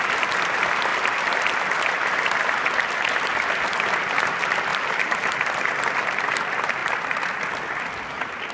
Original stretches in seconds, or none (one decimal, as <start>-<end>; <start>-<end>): 0.0-4.7; 5.7-8.5